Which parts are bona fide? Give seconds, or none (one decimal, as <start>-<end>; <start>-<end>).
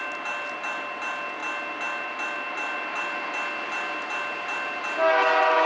0.0-5.7